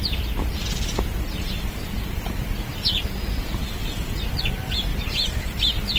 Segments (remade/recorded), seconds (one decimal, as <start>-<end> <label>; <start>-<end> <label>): 0.0-0.4 recorded; 0.4-2.5 remade; 2.5-3.8 recorded; 3.8-4.4 remade; 4.4-4.9 recorded; 4.9-6.0 remade